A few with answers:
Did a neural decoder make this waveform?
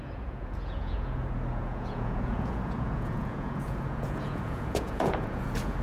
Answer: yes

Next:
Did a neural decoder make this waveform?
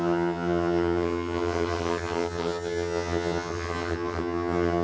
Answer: yes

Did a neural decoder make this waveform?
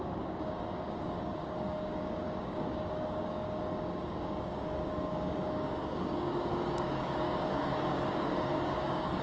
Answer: yes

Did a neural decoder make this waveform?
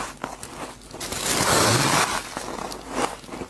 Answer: no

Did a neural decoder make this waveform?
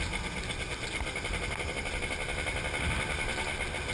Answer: no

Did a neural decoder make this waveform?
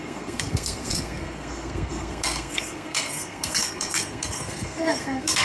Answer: yes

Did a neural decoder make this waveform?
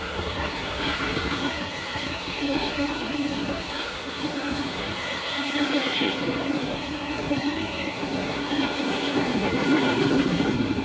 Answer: yes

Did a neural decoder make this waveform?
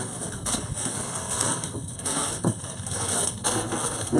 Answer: yes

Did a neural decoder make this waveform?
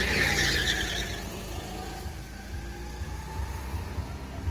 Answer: no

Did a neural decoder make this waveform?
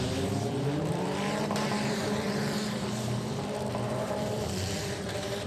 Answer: yes